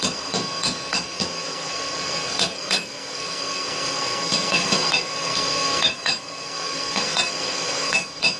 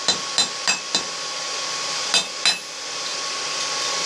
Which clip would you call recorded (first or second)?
second